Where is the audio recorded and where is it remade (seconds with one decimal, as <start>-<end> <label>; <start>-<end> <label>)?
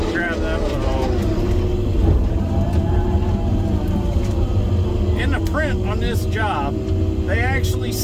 0.0-3.5 recorded; 3.5-4.9 remade; 4.9-8.0 recorded